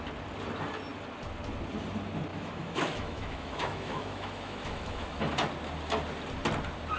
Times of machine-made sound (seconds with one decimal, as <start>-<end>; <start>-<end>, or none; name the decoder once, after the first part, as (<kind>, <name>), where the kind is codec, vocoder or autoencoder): 2.3-5.2 (autoencoder, DAC-VAE)